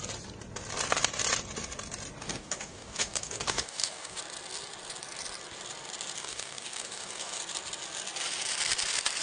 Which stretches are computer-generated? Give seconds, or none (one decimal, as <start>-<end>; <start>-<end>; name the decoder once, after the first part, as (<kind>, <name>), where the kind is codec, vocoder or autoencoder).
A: 2.2-4.2 (codec, DAC); 6.2-7.4